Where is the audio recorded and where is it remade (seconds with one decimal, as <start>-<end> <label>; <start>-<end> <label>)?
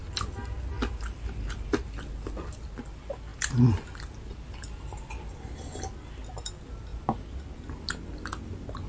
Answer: 0.0-8.9 recorded